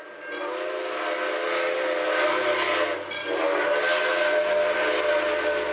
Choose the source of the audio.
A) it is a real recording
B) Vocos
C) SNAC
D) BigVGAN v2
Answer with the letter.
A